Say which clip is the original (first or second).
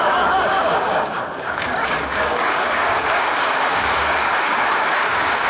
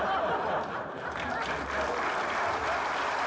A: second